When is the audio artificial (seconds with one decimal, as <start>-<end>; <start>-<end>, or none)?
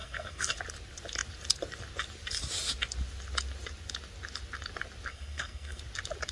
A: 0.0-0.6; 5.1-5.8